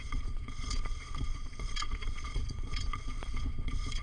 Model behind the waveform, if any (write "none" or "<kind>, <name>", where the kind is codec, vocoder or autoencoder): vocoder, Vocos